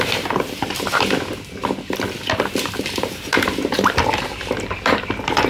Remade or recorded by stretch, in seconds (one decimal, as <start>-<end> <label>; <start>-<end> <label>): 0.0-0.9 remade; 0.9-2.7 recorded; 2.7-5.5 remade